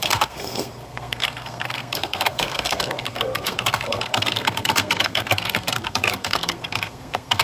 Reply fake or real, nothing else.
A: fake